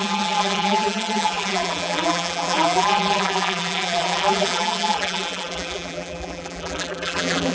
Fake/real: fake